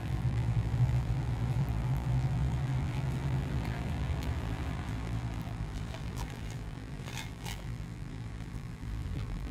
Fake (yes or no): yes